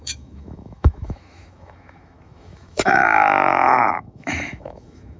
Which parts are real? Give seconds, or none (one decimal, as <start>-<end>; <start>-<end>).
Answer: none